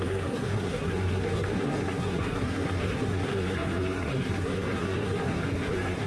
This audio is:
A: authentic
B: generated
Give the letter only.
B